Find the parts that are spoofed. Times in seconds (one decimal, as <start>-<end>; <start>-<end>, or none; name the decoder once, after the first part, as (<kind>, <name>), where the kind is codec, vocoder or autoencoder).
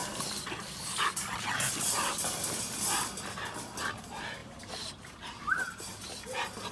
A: 4.4-5.6 (vocoder, BigVGAN v2)